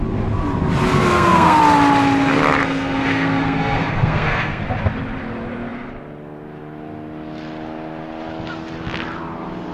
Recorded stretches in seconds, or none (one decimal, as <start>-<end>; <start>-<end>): 0.0-0.9; 1.6-2.6; 4.6-9.7